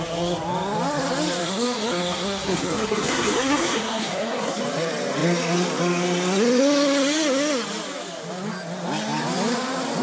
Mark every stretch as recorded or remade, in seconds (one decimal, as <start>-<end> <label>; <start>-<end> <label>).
0.0-1.4 recorded; 1.4-4.6 remade; 4.6-10.0 recorded